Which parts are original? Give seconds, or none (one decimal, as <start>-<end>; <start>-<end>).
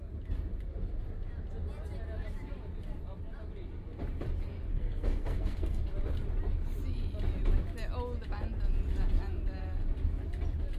0.0-4.7; 5.8-10.8